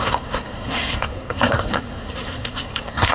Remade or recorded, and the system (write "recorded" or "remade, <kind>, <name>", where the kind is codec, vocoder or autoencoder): remade, codec, SNAC